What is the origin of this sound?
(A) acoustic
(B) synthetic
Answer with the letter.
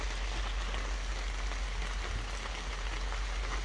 A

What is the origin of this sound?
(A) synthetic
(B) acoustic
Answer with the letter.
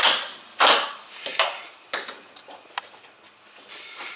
B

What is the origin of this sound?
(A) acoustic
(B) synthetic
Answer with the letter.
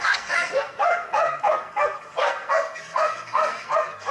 B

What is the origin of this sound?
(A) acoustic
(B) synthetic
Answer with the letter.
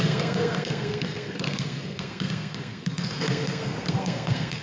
B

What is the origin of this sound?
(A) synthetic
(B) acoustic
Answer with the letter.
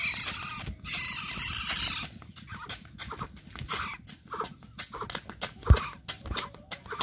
B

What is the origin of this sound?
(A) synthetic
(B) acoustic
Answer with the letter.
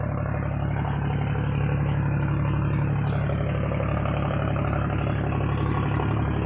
B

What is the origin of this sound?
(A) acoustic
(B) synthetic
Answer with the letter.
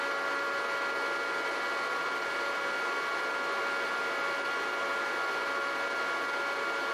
A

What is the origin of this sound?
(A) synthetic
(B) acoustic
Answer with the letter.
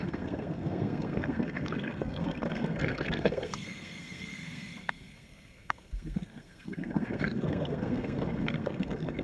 A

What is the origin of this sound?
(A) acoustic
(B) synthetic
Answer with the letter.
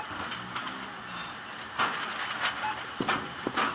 A